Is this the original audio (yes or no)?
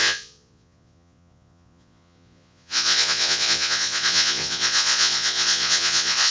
no